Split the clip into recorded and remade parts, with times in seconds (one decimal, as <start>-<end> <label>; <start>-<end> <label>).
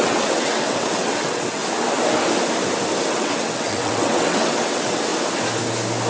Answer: 0.0-1.6 remade; 1.6-3.1 recorded; 3.1-5.1 remade; 5.1-6.1 recorded